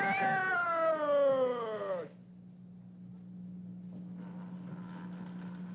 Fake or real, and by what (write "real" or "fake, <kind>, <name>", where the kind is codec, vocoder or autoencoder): real